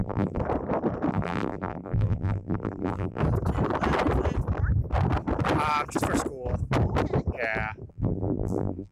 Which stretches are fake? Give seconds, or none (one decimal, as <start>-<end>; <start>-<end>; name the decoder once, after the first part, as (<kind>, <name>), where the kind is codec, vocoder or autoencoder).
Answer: 0.0-0.4 (vocoder, BigVGAN v2); 1.1-3.2; 7.9-8.9